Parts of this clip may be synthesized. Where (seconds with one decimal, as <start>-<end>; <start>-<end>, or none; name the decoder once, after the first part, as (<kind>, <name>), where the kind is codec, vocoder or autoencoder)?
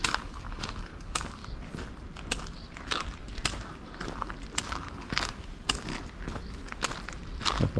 0.0-1.4 (codec, DAC); 4.7-5.9